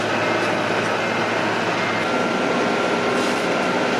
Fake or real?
real